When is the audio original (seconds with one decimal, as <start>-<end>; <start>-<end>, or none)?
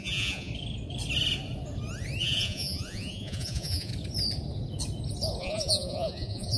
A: 0.5-2.2; 3.9-5.4